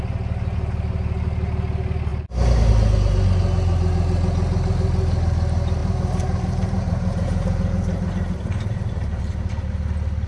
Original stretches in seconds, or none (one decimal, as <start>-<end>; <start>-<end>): 0.0-5.8; 9.5-10.3